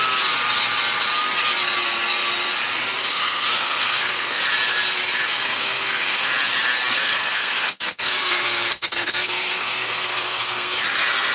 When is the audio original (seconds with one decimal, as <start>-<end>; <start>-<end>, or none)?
0.0-3.0; 4.4-5.3; 6.3-6.9; 10.8-11.3